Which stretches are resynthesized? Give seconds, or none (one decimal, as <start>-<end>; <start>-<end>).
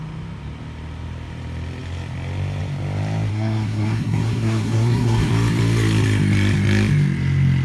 3.3-5.3